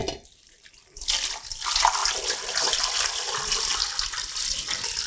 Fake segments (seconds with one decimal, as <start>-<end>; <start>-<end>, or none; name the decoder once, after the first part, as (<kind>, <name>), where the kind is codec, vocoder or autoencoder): none